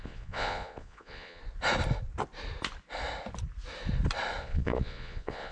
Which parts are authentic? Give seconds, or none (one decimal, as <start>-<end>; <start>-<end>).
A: 1.4-4.4